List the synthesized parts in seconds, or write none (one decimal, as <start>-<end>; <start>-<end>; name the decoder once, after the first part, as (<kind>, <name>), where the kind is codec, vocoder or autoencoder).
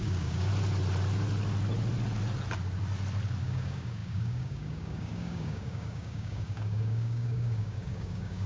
0.0-0.5 (codec, DAC); 3.4-8.5